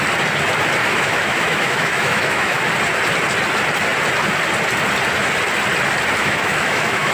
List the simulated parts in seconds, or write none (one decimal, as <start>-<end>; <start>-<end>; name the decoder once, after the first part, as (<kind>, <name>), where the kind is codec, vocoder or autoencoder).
0.8-2.7 (autoencoder, DAC-VAE); 6.2-7.1